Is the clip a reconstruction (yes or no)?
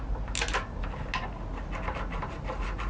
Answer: no